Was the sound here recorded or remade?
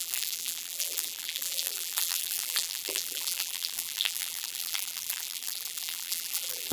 remade